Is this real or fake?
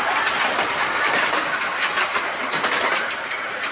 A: real